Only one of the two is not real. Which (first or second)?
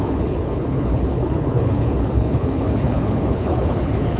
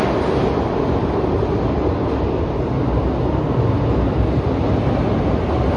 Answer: first